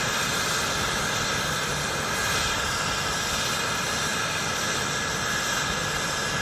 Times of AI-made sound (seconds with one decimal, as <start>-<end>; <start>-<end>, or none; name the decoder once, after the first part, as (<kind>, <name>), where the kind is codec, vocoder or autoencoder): none